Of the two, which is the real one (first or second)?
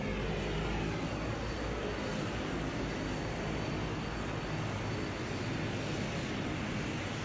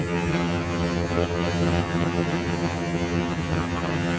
first